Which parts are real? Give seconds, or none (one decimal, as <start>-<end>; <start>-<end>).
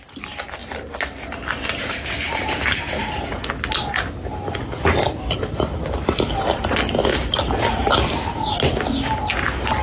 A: 0.0-9.8